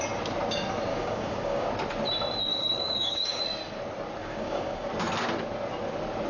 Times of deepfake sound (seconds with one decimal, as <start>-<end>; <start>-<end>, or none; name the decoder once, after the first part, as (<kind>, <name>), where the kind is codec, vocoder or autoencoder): 0.9-1.7 (codec, DAC); 2.5-3.4; 4.2-4.9